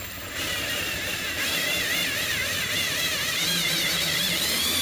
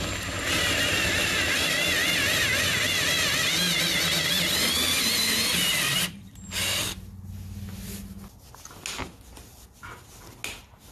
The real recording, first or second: second